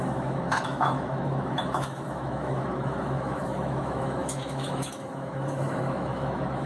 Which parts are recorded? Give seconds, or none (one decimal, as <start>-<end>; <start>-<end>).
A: none